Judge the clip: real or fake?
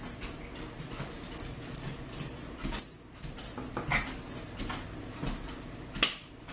real